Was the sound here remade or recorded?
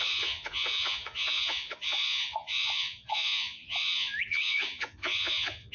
remade